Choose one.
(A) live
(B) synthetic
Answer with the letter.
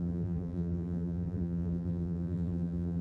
B